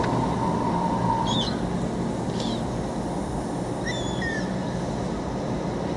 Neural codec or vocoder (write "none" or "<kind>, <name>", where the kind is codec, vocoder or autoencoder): none